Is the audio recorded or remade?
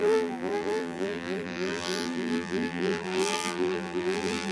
remade